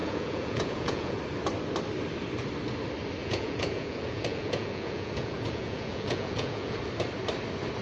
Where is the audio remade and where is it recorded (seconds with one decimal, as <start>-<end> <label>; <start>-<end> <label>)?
0.0-1.2 remade; 1.2-3.2 recorded; 3.2-6.8 remade; 6.8-7.8 recorded